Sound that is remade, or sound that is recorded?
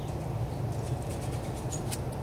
recorded